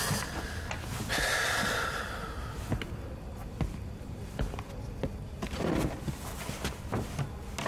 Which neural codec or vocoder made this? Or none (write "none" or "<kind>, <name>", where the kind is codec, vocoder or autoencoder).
none